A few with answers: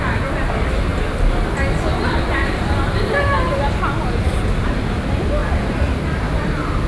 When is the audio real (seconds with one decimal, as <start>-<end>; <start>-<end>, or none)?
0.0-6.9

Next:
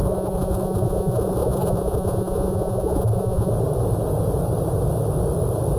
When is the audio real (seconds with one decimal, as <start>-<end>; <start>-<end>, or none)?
3.5-5.8

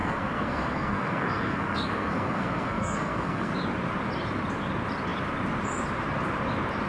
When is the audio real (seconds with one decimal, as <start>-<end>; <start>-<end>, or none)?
3.5-6.9

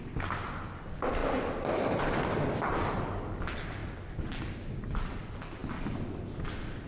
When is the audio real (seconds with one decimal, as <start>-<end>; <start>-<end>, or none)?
0.0-3.8; 4.7-6.9

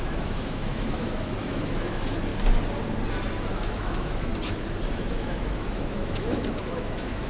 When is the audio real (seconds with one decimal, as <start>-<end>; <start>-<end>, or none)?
2.3-3.5; 4.3-4.9

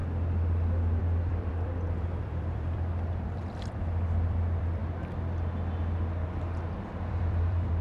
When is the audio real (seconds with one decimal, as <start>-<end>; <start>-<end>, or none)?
0.0-1.0; 4.8-6.8